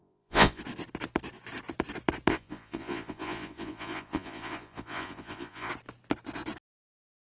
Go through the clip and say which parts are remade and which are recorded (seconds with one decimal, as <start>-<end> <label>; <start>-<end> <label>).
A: 0.0-0.6 remade; 0.6-2.3 recorded; 2.3-5.7 remade; 5.7-7.4 recorded